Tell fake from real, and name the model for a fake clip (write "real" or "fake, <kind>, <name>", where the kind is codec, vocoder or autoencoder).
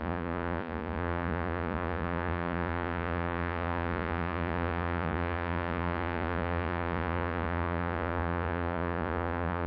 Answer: fake, vocoder, Vocos